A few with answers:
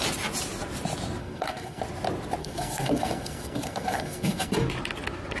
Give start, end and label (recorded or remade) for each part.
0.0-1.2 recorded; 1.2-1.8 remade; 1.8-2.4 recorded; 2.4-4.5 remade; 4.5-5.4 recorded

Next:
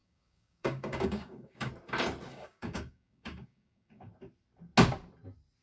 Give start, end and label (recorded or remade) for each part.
0.0-1.7 remade; 1.7-2.3 recorded; 2.3-4.1 remade; 4.1-5.6 recorded